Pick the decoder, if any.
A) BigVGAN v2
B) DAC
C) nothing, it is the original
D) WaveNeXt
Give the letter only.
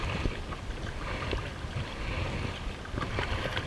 C